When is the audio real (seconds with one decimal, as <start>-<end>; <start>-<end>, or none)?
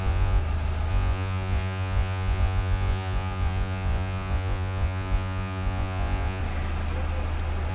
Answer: 0.4-0.9; 6.4-7.7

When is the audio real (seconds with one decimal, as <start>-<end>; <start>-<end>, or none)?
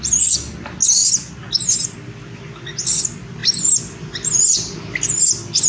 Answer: 0.0-5.7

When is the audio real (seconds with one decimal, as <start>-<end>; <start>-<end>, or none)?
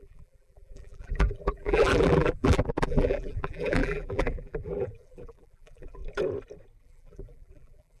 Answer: 6.0-6.8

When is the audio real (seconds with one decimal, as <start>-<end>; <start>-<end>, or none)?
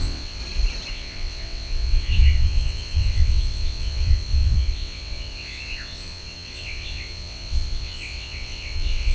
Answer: 0.4-0.9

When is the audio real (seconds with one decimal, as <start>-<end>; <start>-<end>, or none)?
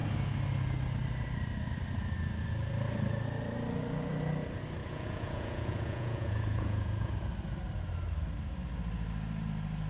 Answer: 0.0-4.8; 7.3-9.9